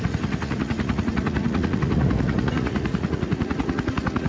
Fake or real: fake